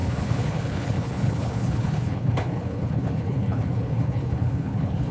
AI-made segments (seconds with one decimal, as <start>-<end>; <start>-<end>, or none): 0.0-5.1